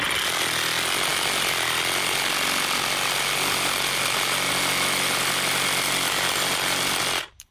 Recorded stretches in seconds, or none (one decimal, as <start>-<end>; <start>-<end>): 0.0-7.5